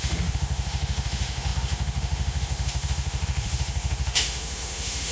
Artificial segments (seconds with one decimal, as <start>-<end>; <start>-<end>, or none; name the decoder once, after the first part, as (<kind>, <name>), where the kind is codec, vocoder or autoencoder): 0.0-5.1 (autoencoder, DAC-VAE)

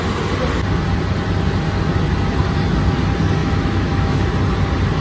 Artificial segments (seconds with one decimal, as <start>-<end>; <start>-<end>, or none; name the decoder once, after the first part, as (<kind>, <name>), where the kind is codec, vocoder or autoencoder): 3.4-4.1 (autoencoder, DAC-VAE)

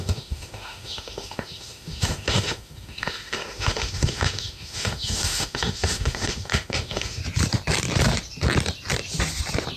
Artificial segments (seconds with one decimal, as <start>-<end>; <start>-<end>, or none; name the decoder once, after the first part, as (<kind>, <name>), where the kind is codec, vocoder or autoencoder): 0.0-7.2 (autoencoder, DAC-VAE)

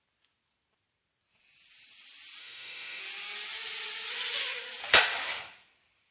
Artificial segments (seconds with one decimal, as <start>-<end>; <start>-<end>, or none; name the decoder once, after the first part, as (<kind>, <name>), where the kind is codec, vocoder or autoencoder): 2.4-3.0 (autoencoder, DAC-VAE)

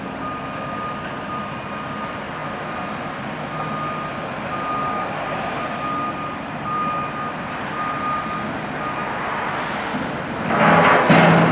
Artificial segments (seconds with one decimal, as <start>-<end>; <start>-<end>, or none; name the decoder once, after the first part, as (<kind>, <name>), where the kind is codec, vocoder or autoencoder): none

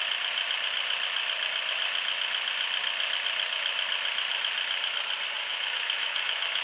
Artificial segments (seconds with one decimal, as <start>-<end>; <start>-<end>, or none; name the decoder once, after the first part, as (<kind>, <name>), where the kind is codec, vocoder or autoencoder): 5.5-6.6 (autoencoder, DAC-VAE)

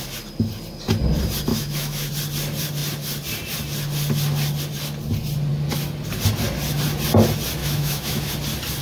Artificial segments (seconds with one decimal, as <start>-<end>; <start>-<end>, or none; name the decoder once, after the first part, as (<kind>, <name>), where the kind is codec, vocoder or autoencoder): 1.5-2.1 (autoencoder, DAC-VAE); 7.6-8.3